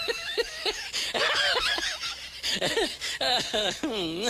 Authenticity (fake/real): fake